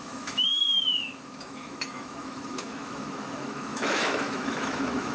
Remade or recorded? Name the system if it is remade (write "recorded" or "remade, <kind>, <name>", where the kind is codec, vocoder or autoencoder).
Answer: remade, autoencoder, DAC-VAE